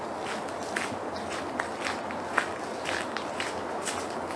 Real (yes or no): yes